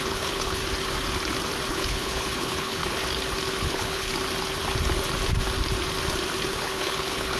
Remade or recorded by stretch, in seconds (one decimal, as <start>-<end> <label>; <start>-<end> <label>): 0.0-0.6 remade; 0.6-1.7 recorded; 1.7-2.8 remade; 2.8-3.6 recorded; 3.6-4.1 remade; 4.1-6.5 recorded; 6.5-7.4 remade

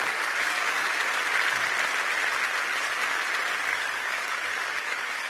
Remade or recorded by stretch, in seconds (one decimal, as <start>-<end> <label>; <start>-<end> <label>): 0.0-0.9 remade; 0.9-3.6 recorded; 3.6-5.3 remade

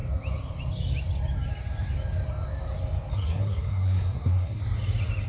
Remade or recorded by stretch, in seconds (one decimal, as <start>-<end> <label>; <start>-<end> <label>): 0.0-3.1 recorded; 3.1-4.6 remade; 4.6-5.3 recorded

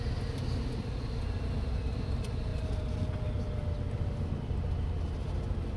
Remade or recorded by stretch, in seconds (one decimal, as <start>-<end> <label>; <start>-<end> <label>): 0.0-5.8 recorded

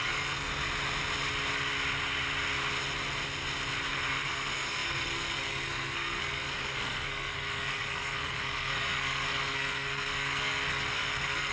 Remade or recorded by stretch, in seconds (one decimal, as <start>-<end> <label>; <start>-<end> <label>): 0.0-0.5 remade; 0.5-3.9 recorded; 3.9-11.5 remade